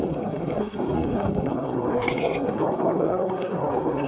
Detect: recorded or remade remade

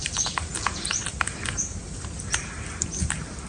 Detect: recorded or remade remade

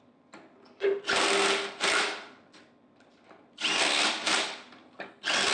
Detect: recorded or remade recorded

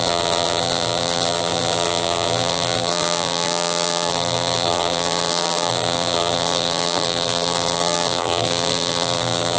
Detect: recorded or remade remade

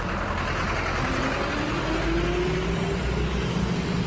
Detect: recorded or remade recorded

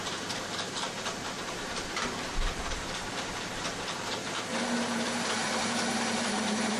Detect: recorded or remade remade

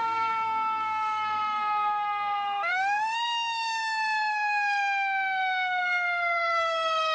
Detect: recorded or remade remade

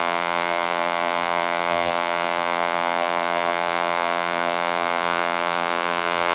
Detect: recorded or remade remade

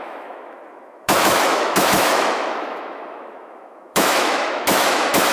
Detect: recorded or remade remade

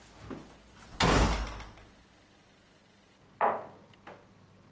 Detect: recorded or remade recorded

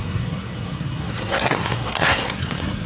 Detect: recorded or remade remade